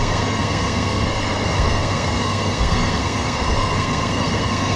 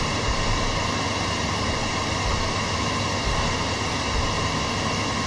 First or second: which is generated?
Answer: first